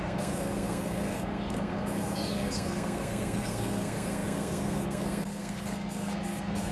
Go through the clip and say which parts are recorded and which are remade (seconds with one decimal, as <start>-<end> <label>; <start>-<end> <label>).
0.0-6.7 remade